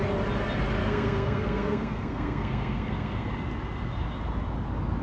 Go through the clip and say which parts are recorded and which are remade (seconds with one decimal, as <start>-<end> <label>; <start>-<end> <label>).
0.0-0.8 recorded; 0.8-3.3 remade; 3.3-5.0 recorded